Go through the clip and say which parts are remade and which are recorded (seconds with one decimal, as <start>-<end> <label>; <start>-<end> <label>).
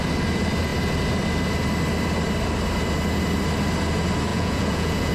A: 0.0-4.3 recorded; 4.3-5.1 remade